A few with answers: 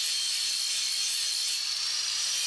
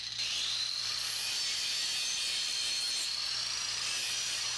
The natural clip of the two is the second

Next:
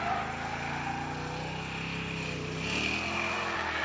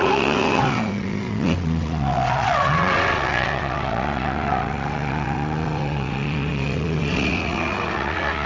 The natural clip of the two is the first